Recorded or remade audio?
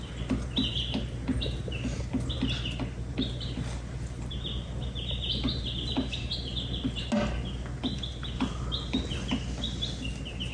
recorded